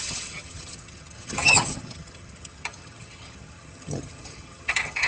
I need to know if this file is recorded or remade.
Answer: remade